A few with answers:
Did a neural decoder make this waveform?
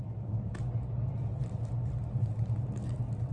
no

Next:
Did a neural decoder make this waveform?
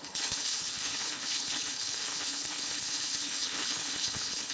yes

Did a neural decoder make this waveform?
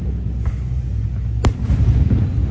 no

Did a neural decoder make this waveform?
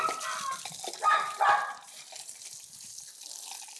no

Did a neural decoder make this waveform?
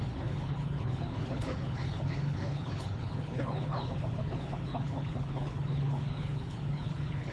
yes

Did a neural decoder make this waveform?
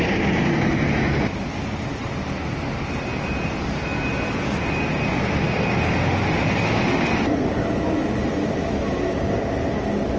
no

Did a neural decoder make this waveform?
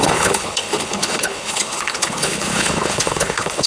yes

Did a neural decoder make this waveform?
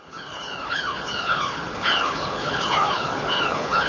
yes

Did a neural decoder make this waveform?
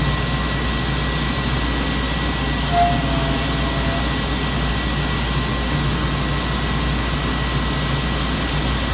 no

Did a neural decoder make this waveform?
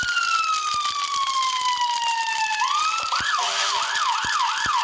no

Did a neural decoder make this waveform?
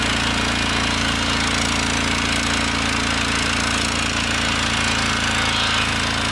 no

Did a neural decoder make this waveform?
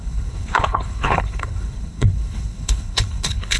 yes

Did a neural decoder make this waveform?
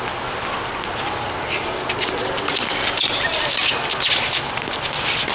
no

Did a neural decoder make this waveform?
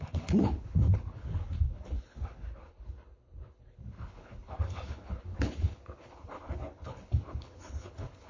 yes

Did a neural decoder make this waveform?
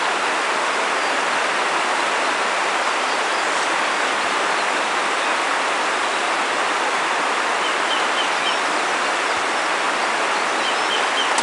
no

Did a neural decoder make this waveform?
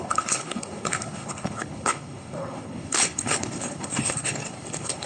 yes